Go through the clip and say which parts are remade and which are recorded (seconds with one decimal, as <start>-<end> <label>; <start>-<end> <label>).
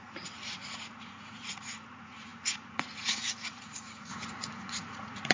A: 0.0-5.3 remade